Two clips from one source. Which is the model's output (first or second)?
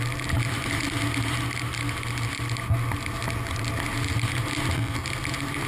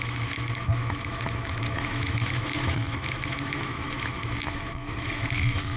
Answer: second